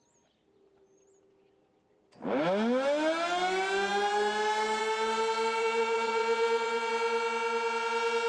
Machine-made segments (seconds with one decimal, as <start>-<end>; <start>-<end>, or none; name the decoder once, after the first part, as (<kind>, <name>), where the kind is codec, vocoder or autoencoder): 5.6-6.9 (vocoder, WaveNeXt)